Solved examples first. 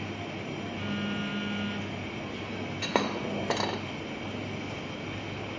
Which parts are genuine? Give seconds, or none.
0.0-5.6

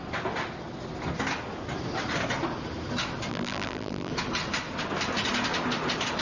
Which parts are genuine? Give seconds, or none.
0.0-3.3; 4.1-6.2

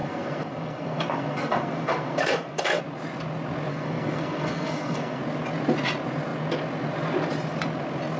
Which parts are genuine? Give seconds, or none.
2.8-3.7; 5.2-8.2